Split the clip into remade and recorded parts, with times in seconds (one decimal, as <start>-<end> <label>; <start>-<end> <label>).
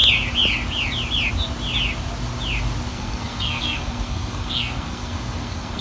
0.0-2.9 recorded; 2.9-5.8 remade